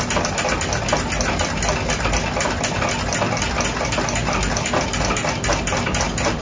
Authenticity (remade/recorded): recorded